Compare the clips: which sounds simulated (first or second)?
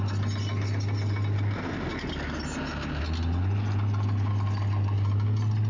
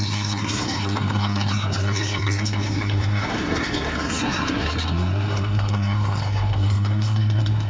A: second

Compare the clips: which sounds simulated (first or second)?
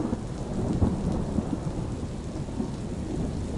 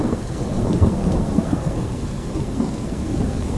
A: second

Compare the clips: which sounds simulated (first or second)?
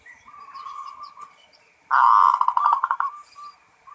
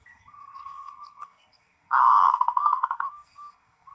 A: second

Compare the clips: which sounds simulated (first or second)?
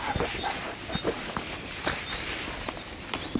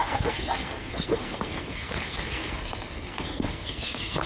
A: second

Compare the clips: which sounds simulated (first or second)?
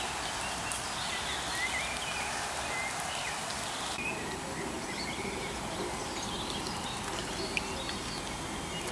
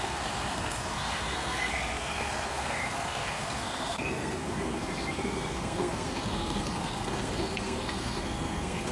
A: second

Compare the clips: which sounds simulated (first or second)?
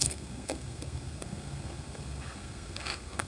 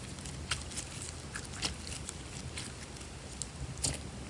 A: first